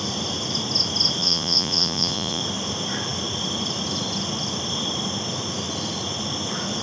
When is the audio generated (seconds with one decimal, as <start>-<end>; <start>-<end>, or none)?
1.2-2.4